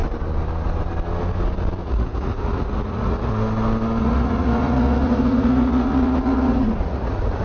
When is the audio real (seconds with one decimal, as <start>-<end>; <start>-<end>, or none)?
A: 0.0-1.8; 3.3-4.0